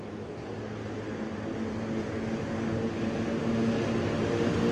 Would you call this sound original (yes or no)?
yes